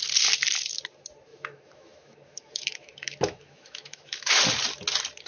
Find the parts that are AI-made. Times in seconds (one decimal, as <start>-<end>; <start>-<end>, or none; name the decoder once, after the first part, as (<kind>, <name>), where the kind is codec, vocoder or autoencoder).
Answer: 1.3-4.4 (autoencoder, DAC-VAE)